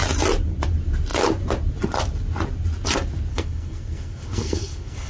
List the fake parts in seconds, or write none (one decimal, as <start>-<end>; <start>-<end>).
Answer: 3.3-5.1